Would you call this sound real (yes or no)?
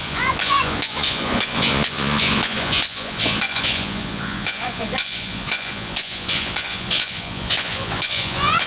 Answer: no